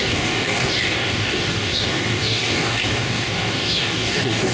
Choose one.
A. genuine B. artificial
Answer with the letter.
B